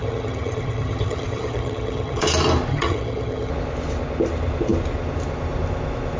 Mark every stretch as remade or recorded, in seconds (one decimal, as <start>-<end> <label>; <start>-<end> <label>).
0.0-2.2 remade; 2.2-2.7 recorded; 2.7-3.5 remade; 3.5-6.2 recorded